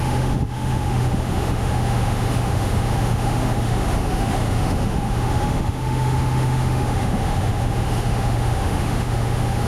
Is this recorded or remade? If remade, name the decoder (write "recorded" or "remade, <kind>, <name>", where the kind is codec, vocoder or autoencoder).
remade, autoencoder, DAC-VAE